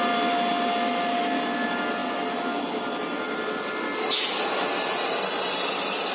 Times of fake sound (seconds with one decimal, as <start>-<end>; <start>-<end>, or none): none